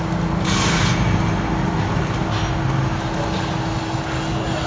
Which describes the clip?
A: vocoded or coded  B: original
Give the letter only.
B